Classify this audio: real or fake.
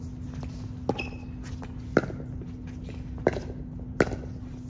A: real